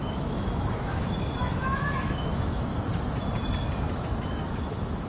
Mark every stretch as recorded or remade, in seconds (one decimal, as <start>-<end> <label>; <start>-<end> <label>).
0.0-2.7 remade; 2.7-3.9 recorded; 3.9-5.1 remade

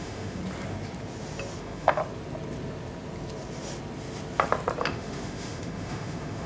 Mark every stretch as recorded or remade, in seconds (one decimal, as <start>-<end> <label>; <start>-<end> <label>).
0.0-0.4 remade; 0.4-1.6 recorded; 1.6-2.0 remade; 2.0-4.8 recorded; 4.8-6.5 remade

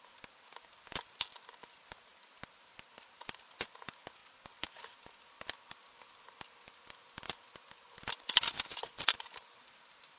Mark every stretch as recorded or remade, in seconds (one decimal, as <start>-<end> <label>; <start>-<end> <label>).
0.0-10.2 recorded

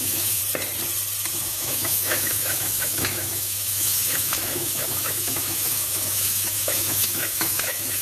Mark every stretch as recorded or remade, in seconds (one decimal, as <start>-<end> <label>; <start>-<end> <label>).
0.0-0.4 remade; 0.4-1.3 recorded; 1.3-8.0 remade

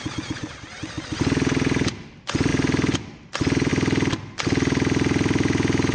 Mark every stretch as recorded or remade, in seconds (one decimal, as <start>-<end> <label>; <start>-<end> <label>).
0.0-5.9 recorded

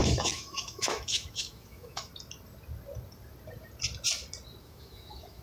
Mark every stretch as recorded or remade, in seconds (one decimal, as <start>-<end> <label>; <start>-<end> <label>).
0.0-2.1 remade; 2.1-4.6 recorded; 4.6-5.4 remade